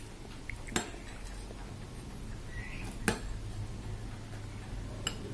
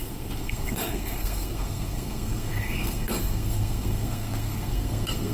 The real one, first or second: first